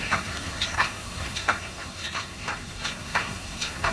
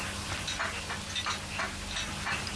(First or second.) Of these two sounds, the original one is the second